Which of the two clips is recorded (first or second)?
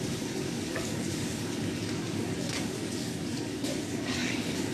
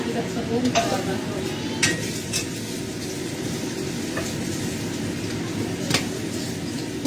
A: second